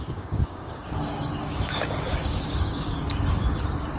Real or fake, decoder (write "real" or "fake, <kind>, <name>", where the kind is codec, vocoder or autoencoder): fake, codec, DAC